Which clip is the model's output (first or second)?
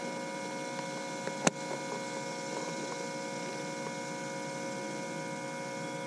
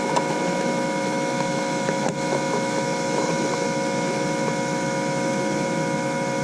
second